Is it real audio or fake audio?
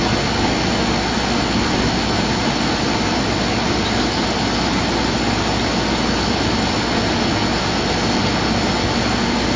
real